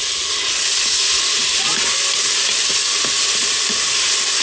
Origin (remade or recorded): recorded